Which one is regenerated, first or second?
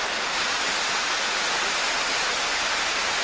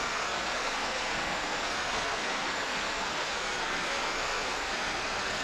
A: second